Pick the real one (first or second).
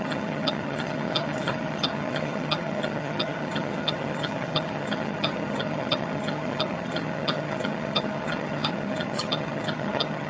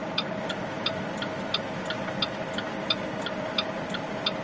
second